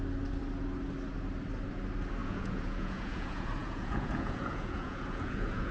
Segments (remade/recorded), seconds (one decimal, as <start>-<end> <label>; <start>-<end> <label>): 0.0-2.2 recorded; 2.2-5.7 remade